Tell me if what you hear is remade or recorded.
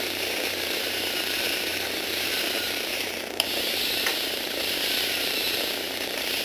remade